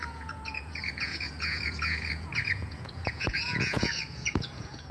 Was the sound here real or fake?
fake